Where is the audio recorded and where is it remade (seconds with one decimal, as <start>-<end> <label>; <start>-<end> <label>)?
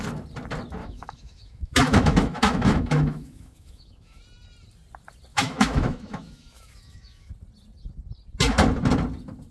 0.0-0.8 recorded; 0.8-4.2 remade; 4.2-5.3 recorded; 5.3-7.3 remade; 7.3-9.5 recorded